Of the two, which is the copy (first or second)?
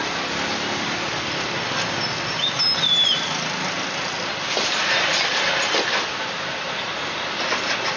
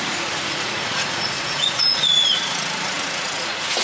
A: second